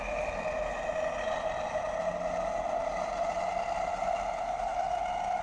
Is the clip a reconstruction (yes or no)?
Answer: no